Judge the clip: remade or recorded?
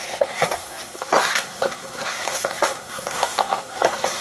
remade